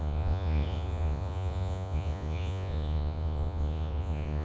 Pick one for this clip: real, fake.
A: fake